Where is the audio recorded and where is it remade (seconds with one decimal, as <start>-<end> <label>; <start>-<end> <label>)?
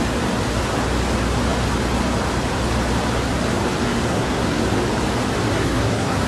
0.0-4.1 recorded; 4.1-4.6 remade; 4.6-5.5 recorded; 5.5-6.3 remade